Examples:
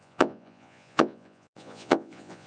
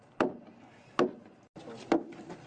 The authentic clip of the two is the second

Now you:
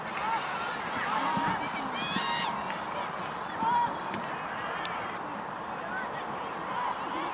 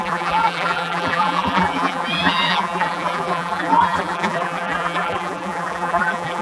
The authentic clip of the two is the first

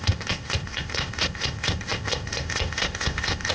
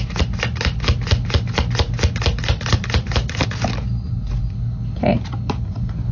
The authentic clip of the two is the second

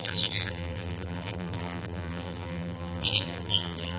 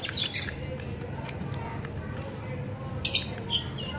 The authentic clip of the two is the second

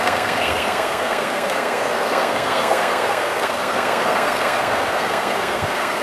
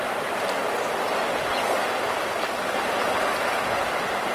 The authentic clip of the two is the second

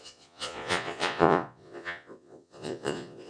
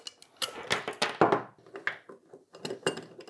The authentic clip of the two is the second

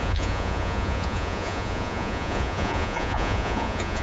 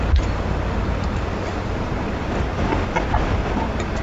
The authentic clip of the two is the second